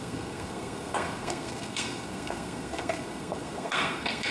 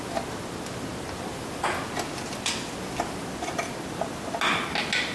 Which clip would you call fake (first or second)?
first